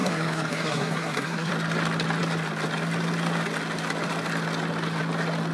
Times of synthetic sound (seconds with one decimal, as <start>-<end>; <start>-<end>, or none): 0.0-1.5

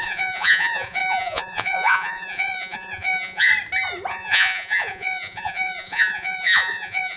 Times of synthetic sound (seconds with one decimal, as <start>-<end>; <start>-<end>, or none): 0.0-3.5; 4.1-7.2